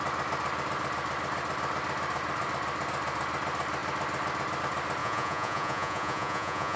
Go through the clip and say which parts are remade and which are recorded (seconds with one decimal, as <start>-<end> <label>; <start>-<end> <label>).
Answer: 0.0-5.0 recorded; 5.0-6.8 remade